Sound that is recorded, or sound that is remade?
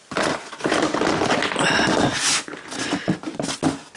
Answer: recorded